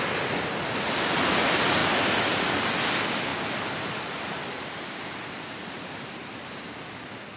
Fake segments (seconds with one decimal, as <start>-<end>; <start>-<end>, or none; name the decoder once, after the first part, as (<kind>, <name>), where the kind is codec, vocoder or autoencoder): 1.8-2.4 (vocoder, BigVGAN v2); 3.3-6.6